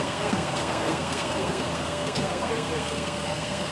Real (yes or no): no